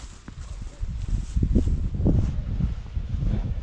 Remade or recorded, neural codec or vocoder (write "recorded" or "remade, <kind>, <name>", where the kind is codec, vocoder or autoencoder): recorded